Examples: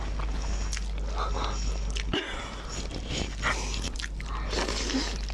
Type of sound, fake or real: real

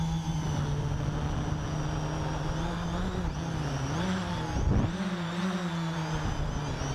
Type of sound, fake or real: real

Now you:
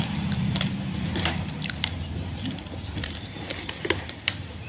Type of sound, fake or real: fake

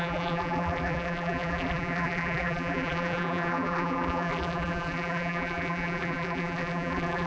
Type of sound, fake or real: fake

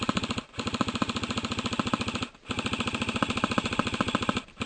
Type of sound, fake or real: real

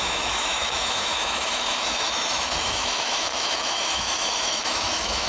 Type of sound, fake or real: fake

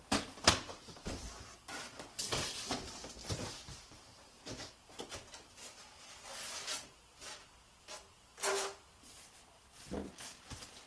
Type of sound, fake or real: real